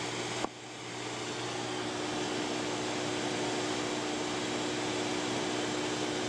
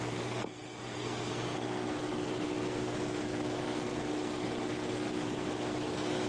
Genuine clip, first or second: first